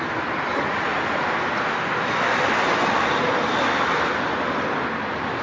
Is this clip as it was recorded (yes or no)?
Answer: yes